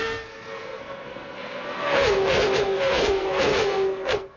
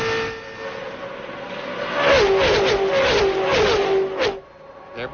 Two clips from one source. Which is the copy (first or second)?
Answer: first